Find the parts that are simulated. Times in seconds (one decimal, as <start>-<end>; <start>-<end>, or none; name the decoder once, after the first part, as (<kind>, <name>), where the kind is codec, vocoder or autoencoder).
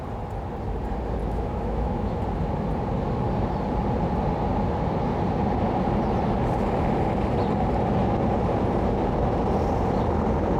1.2-2.2 (autoencoder, DAC-VAE)